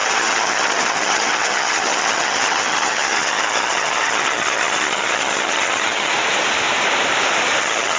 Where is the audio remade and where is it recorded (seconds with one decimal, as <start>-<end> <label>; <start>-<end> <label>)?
0.0-6.1 remade; 6.1-7.6 recorded; 7.6-8.0 remade